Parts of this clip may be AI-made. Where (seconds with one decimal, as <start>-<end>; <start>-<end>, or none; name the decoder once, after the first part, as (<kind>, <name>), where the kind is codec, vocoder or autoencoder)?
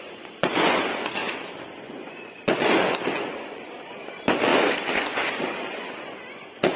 0.0-6.8 (vocoder, Vocos)